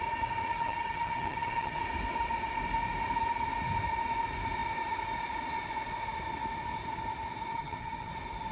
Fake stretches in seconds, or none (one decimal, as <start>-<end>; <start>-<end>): 0.5-1.8; 7.5-8.1